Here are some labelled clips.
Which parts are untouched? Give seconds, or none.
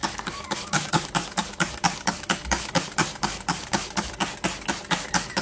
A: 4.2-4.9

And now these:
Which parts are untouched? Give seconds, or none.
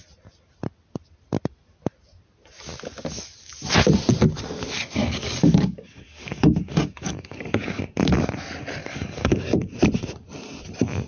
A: 0.0-5.0; 7.8-8.8; 9.7-11.1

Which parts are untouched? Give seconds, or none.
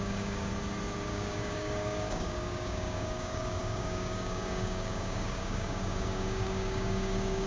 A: 0.5-1.0